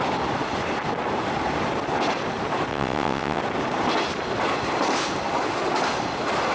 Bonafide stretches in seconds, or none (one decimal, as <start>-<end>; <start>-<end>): 0.0-2.7; 3.4-6.5